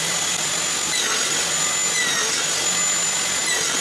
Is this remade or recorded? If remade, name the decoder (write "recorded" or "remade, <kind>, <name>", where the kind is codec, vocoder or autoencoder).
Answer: recorded